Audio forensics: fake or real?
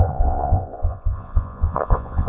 fake